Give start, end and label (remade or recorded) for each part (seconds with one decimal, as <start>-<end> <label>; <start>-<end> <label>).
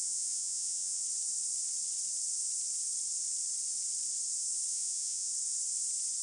0.0-1.0 remade; 1.0-4.7 recorded; 4.7-5.3 remade; 5.3-6.2 recorded